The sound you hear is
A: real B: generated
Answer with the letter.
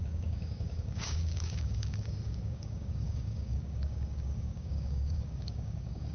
B